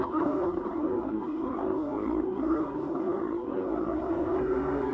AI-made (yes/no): yes